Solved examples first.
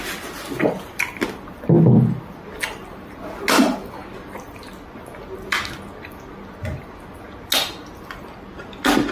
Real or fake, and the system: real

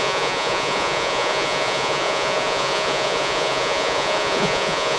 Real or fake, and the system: fake, vocoder, Vocos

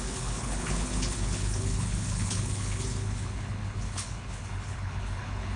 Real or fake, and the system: fake, codec, HILCodec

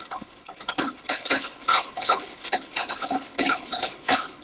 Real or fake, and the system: fake, codec, HILCodec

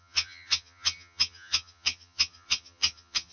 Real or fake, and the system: fake, vocoder, HiFi-GAN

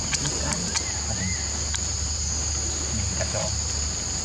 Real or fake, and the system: real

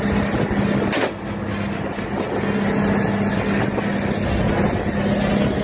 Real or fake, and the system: real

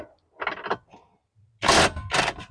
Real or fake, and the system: real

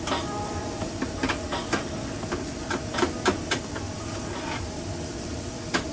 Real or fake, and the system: fake, vocoder, BigVGAN v2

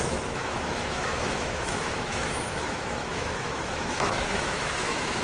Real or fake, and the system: fake, autoencoder, DAC-VAE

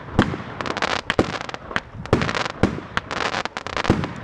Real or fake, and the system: real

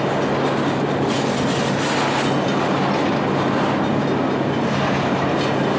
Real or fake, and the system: real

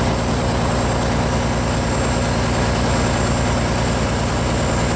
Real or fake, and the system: real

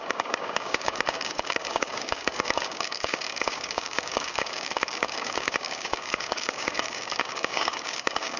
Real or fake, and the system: fake, codec, DAC